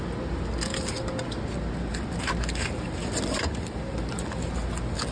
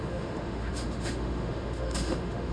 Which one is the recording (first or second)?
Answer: first